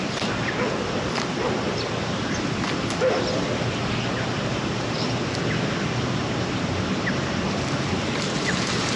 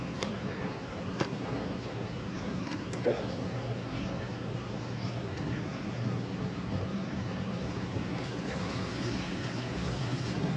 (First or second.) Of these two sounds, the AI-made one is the second